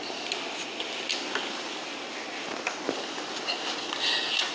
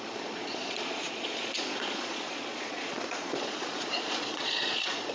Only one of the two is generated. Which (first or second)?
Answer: second